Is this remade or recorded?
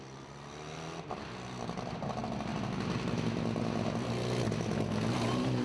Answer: recorded